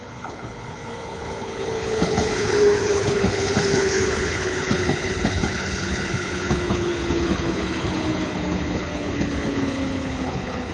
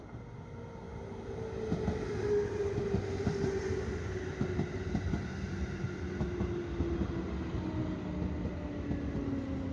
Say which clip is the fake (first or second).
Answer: first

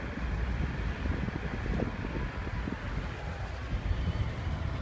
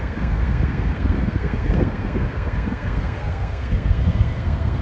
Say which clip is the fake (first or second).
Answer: second